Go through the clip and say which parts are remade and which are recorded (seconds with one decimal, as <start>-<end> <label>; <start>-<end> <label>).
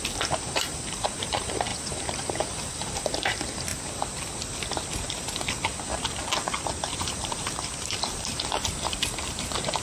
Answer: 0.0-3.7 remade; 3.7-6.9 recorded; 6.9-9.8 remade